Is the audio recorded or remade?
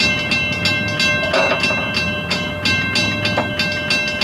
recorded